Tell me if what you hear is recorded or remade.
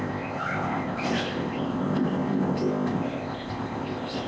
remade